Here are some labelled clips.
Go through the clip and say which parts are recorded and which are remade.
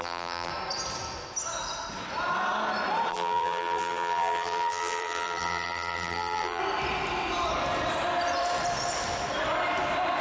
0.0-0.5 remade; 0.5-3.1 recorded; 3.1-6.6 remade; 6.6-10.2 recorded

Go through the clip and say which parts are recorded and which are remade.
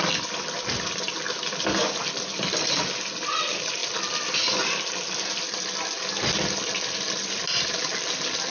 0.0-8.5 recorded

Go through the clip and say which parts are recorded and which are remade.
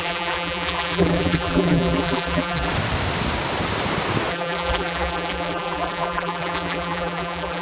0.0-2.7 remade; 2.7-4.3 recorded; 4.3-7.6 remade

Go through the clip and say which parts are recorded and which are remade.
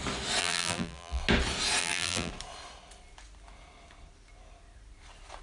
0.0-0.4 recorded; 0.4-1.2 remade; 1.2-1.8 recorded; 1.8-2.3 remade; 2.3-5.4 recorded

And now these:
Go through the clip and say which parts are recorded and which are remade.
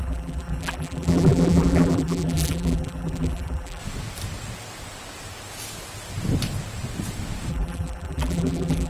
0.0-3.8 remade; 3.8-7.5 recorded; 7.5-8.9 remade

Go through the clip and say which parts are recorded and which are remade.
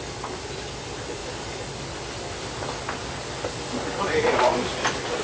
0.0-1.2 remade; 1.2-4.0 recorded; 4.0-5.2 remade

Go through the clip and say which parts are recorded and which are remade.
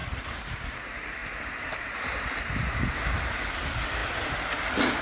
0.0-1.2 recorded; 1.2-3.4 remade; 3.4-4.0 recorded; 4.0-4.6 remade; 4.6-5.0 recorded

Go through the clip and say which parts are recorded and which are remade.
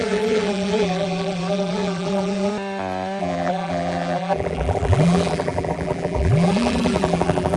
0.0-2.5 remade; 2.5-3.2 recorded; 3.2-7.6 remade